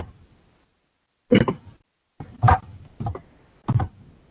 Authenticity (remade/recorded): recorded